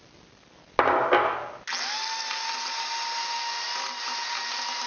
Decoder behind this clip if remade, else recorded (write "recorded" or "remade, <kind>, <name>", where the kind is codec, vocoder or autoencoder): recorded